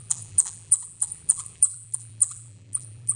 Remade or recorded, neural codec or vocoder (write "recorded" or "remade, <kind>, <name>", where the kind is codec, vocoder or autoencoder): remade, vocoder, BigVGAN v2